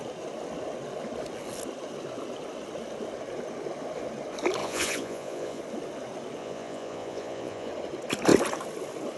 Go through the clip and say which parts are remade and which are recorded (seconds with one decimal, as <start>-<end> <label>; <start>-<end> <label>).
0.0-4.6 recorded; 4.6-5.6 remade; 5.6-6.4 recorded; 6.4-7.7 remade; 7.7-9.2 recorded